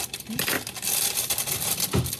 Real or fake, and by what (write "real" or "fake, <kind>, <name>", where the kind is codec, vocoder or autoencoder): fake, vocoder, BigVGAN v2